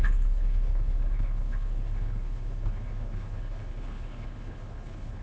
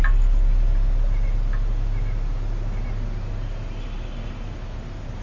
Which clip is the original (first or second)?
second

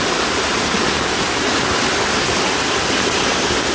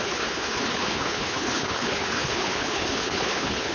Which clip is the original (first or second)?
first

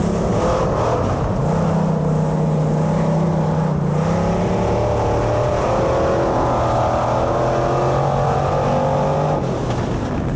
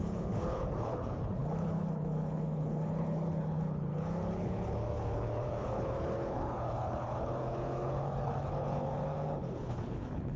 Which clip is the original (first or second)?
first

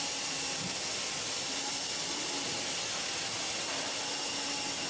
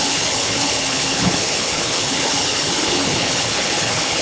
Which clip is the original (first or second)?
first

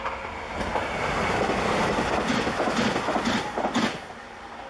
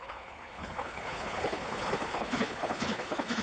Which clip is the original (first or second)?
first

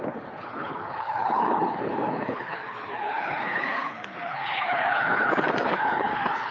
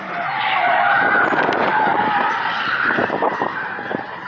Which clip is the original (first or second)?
second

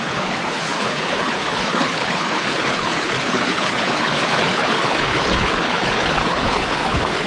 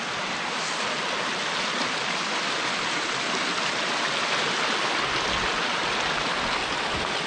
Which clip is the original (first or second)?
second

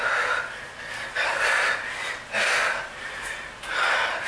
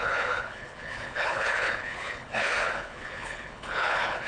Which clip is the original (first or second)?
first